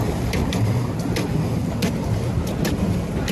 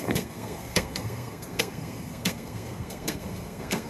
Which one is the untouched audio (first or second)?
first